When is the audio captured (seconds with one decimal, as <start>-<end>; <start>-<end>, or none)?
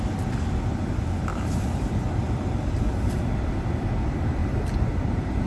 0.0-1.3; 1.9-4.4